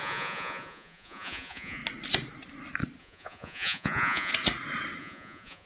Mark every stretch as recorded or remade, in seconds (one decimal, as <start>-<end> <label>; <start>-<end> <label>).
0.0-1.8 remade; 1.8-3.0 recorded; 3.0-4.3 remade; 4.3-5.0 recorded; 5.0-5.7 remade